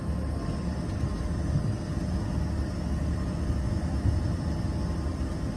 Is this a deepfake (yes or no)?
no